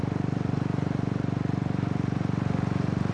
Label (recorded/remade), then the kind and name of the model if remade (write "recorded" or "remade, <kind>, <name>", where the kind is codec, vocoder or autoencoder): recorded